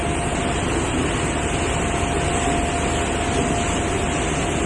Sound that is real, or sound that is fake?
real